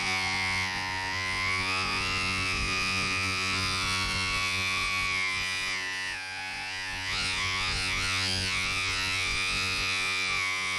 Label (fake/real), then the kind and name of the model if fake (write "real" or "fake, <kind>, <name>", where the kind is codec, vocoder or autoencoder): fake, vocoder, Vocos